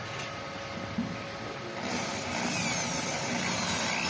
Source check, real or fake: real